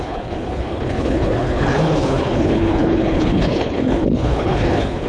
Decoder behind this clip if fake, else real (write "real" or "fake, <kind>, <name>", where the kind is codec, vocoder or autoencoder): fake, codec, HILCodec